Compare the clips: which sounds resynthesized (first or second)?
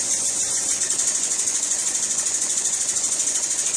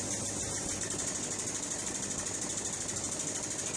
first